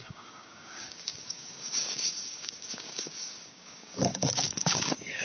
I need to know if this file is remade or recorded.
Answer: remade